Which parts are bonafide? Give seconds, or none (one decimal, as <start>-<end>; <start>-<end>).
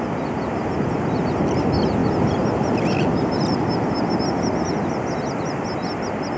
0.0-6.4